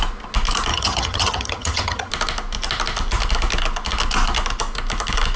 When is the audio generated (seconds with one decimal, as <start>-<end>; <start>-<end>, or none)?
0.7-2.1